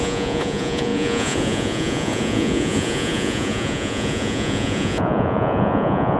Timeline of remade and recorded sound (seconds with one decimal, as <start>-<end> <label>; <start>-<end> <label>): 0.0-6.2 remade